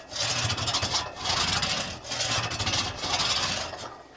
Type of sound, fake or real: real